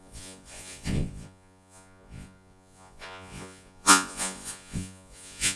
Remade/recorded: remade